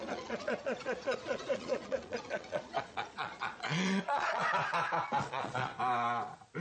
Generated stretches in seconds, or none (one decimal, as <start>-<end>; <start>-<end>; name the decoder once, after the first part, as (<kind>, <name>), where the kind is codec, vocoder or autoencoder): 0.0-4.4 (vocoder, Vocos); 5.2-5.7